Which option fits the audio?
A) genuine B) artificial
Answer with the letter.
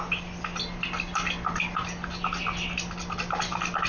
A